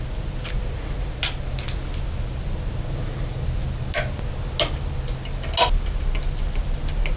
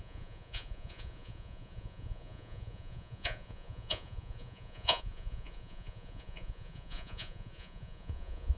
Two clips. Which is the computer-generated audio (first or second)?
second